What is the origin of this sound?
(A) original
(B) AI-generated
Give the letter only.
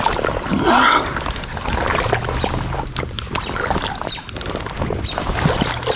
A